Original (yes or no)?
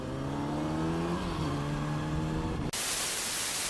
yes